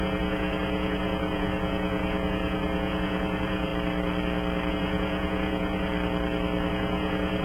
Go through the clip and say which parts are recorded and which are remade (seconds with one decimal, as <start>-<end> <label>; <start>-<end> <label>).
0.0-3.7 remade; 3.7-4.7 recorded; 4.7-5.9 remade; 5.9-6.7 recorded; 6.7-7.4 remade